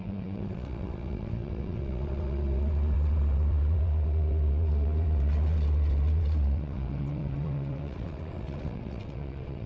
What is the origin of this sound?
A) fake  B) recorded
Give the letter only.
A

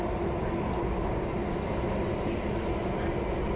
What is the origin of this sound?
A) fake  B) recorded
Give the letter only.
B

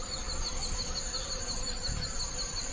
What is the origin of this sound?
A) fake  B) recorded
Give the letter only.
B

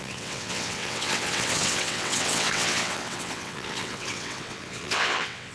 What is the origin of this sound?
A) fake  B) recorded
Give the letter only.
A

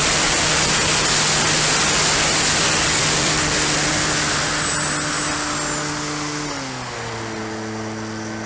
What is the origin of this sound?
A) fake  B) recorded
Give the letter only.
B